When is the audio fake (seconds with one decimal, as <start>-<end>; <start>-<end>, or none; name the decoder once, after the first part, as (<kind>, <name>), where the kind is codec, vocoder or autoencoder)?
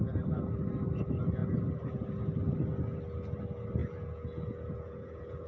3.8-5.5 (vocoder, Vocos)